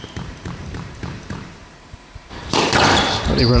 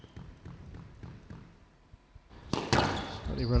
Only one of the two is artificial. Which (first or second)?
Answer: first